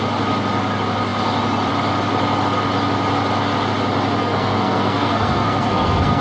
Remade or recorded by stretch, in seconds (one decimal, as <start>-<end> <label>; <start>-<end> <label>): 0.0-4.2 recorded; 4.2-6.2 remade